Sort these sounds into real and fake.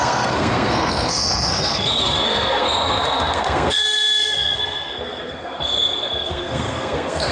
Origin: fake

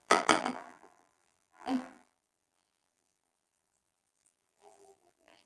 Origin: fake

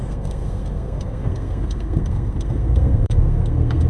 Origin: fake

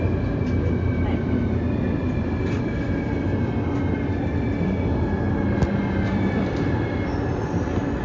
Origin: real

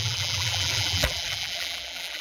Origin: fake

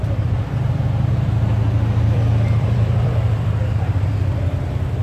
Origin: fake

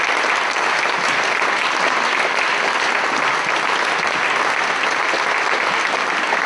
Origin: real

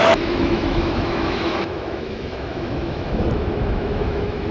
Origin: fake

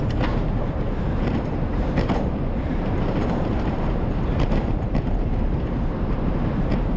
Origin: fake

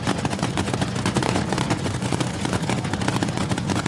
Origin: fake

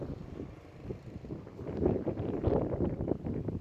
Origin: real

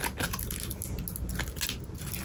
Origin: real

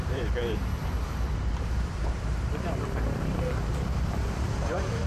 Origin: fake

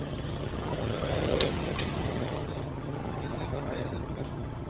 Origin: fake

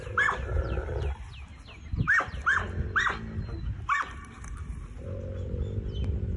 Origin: real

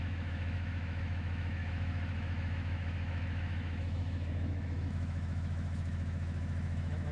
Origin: fake